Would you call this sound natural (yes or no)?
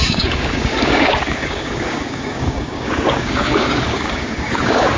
no